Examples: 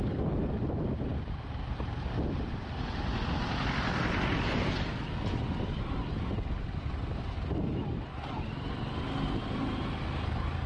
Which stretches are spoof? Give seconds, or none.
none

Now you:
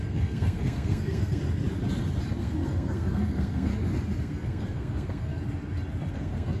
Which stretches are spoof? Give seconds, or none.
0.0-1.4 (codec, SNAC); 2.4-3.7; 4.2-5.3; 6.1-6.6

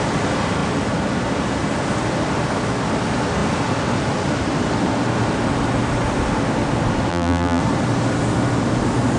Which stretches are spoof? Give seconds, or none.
7.1-7.6 (vocoder, BigVGAN v2)

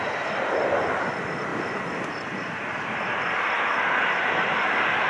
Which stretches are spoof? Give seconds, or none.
none

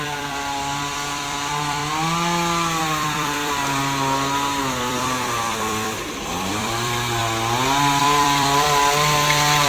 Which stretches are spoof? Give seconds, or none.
0.0-1.8 (vocoder, BigVGAN v2); 2.8-3.8; 4.6-7.2; 8.0-9.7

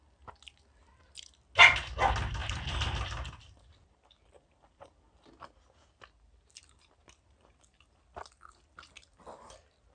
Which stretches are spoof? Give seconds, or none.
2.4-5.3 (vocoder, BigVGAN v2)

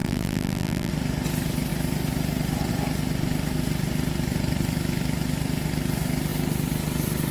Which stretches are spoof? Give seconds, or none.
0.0-0.9 (vocoder, BigVGAN v2)

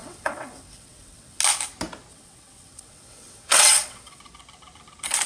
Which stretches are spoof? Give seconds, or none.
0.0-1.4 (vocoder, WaveNeXt); 2.1-4.2